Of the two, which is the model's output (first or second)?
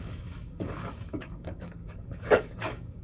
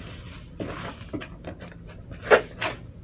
first